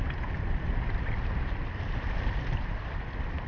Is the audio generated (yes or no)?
no